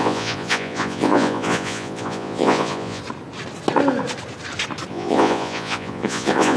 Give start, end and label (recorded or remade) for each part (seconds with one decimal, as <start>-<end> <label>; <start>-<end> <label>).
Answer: 0.0-3.0 remade; 3.0-4.9 recorded; 4.9-6.6 remade